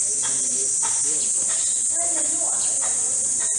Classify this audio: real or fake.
real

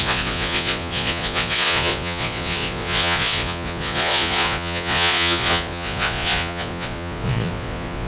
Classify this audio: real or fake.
fake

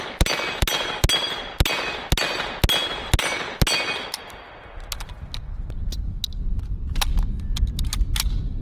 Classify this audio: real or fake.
real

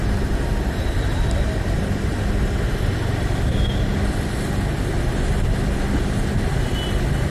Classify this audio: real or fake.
real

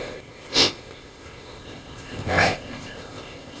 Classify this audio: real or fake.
fake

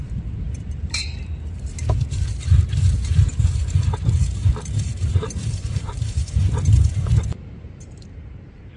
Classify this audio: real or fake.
fake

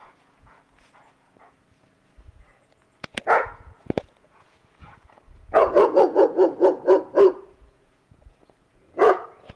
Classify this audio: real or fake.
fake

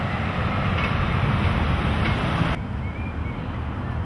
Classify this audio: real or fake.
real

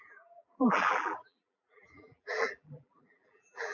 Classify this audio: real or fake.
fake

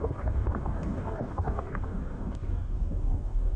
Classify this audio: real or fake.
fake